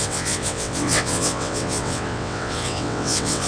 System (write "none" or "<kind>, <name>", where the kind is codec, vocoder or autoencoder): vocoder, WaveNeXt